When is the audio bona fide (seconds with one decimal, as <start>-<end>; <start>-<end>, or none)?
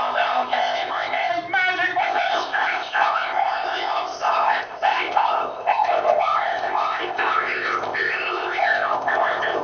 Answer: 1.3-2.0